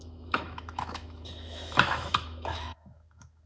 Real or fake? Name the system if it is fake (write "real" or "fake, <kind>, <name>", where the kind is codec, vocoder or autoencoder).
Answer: fake, autoencoder, DAC-VAE